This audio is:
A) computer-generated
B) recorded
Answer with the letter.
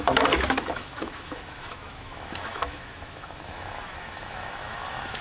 A